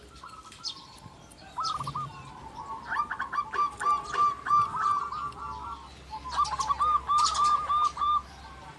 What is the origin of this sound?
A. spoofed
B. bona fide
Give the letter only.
B